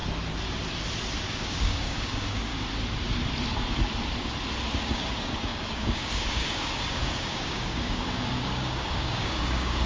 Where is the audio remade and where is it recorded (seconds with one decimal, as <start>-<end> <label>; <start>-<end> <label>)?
0.0-1.2 recorded; 1.2-2.5 remade; 2.5-4.8 recorded; 4.8-9.9 remade

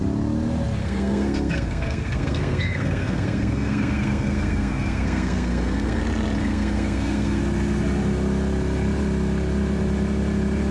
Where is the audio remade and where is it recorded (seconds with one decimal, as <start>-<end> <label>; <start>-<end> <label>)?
0.0-0.8 recorded; 0.8-6.0 remade; 6.0-6.4 recorded; 6.4-7.4 remade; 7.4-10.7 recorded

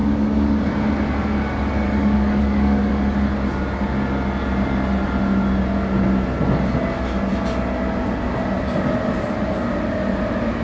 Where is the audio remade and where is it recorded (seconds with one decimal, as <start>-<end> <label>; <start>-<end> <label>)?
0.0-0.7 remade; 0.7-2.0 recorded; 2.0-2.9 remade; 2.9-10.6 recorded

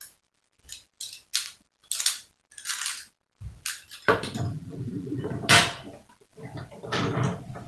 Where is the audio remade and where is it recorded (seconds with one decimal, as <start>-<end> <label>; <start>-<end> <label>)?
0.0-4.5 recorded; 4.5-5.2 remade; 5.2-7.7 recorded

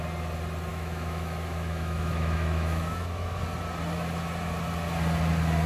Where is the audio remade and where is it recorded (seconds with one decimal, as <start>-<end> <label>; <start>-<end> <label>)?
0.0-0.7 recorded; 0.7-3.4 remade; 3.4-5.7 recorded

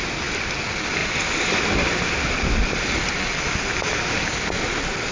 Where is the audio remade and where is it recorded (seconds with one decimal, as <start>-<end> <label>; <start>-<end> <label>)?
0.0-1.0 recorded; 1.0-4.1 remade; 4.1-5.1 recorded

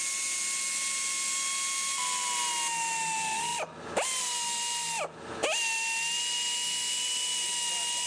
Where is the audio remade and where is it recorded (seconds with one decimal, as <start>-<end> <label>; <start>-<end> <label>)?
0.0-8.1 recorded

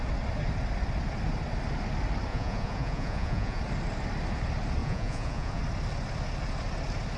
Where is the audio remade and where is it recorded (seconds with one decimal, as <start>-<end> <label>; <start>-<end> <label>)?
0.0-2.3 recorded; 2.3-3.6 remade; 3.6-4.8 recorded; 4.8-5.6 remade; 5.6-7.2 recorded